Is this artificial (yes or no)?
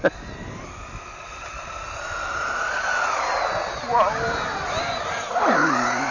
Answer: no